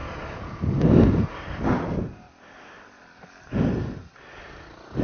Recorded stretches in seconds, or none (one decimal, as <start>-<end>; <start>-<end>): 0.0-5.0